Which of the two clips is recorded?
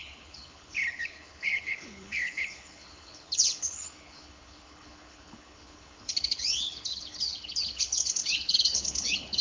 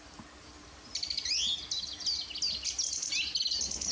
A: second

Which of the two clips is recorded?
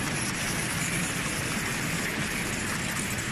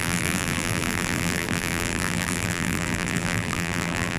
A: first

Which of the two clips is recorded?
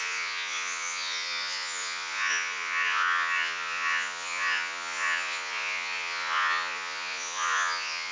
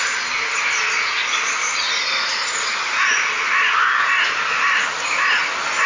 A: second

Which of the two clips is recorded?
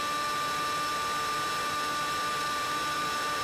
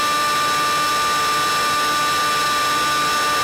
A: second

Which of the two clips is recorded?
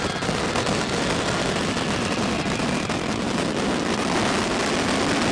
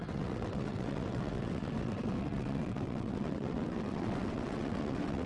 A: first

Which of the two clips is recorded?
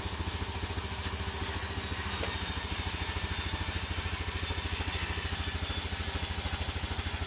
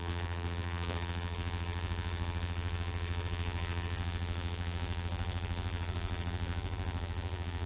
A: first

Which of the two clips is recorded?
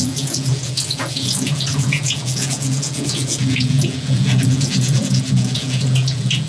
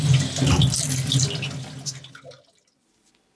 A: second